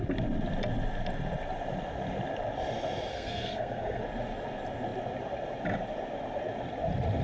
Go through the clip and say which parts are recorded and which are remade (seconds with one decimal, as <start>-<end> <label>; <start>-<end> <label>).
0.0-3.1 recorded; 3.1-4.0 remade; 4.0-7.2 recorded